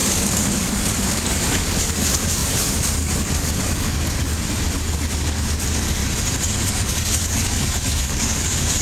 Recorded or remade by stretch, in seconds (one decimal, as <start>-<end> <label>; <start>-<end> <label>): 0.0-4.3 remade; 4.3-4.9 recorded; 4.9-6.0 remade; 6.0-6.7 recorded; 6.7-8.8 remade